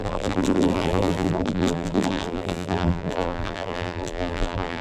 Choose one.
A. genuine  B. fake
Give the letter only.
B